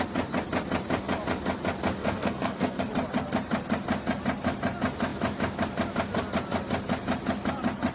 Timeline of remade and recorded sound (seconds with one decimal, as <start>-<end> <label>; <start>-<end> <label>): 0.0-2.0 recorded; 2.0-2.8 remade; 2.8-7.9 recorded